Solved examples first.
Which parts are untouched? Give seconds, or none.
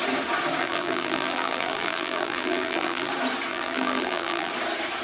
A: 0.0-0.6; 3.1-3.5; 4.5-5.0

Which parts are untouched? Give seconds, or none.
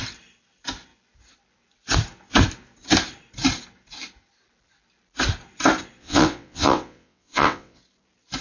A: 0.0-6.0; 7.8-8.4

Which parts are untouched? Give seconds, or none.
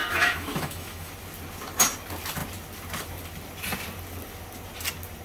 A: 1.1-5.2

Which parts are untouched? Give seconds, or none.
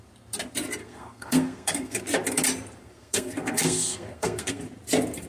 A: 0.0-0.8; 2.0-2.8; 4.6-5.3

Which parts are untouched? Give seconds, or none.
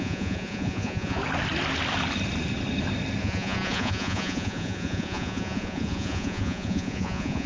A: 1.2-3.2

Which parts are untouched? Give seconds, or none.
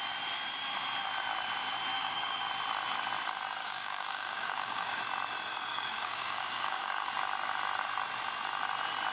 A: 0.0-1.9; 2.5-3.6; 5.0-5.7; 7.1-9.1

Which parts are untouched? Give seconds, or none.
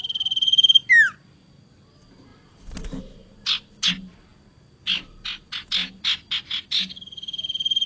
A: 0.0-7.9